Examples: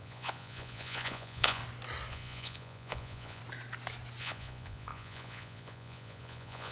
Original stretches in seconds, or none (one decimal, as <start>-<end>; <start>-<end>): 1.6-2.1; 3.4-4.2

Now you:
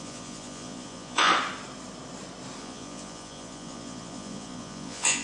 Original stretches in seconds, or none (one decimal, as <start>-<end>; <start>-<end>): 1.3-2.6

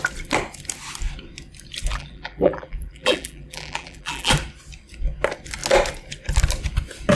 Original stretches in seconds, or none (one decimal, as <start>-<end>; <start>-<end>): 0.0-1.9; 4.3-7.1

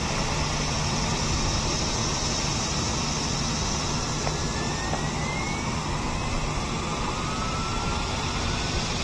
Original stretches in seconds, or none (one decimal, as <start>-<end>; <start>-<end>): 0.0-2.0; 3.0-9.0

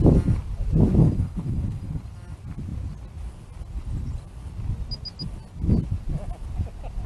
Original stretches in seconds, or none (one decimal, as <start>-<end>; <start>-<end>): 0.0-1.0; 2.0-7.1

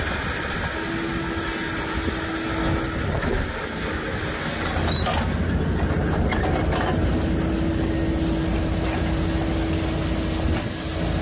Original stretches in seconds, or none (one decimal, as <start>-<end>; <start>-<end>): 0.0-11.2

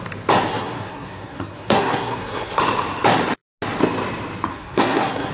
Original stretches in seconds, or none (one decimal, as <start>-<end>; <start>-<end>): 0.0-0.5; 2.6-4.5

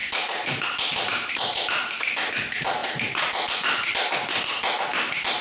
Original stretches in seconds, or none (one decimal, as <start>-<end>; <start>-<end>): 0.0-5.4